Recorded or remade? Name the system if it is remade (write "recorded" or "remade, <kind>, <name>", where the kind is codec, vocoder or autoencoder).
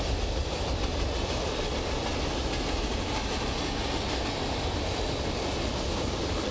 recorded